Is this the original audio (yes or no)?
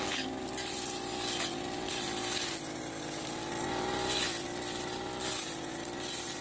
yes